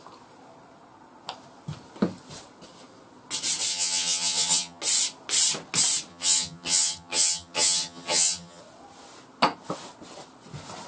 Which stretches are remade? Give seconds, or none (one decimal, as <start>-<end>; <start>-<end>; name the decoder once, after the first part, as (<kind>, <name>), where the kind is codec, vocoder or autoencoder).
3.7-4.8 (vocoder, HiFi-GAN); 6.1-8.6